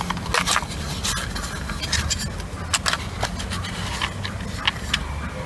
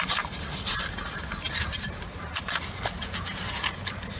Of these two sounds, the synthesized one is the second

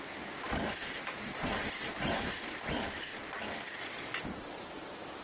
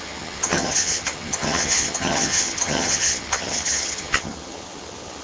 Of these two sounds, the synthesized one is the second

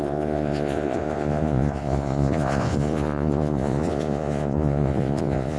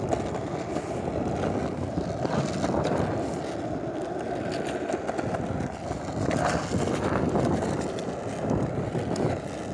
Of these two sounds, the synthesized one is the first